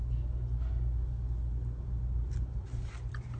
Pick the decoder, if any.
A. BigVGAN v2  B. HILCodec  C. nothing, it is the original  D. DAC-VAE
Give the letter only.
C